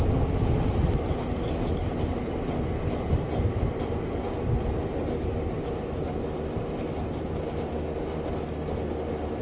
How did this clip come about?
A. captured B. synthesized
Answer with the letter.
A